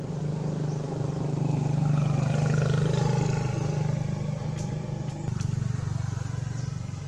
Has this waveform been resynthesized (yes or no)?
no